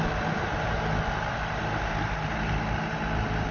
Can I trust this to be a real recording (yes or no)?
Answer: yes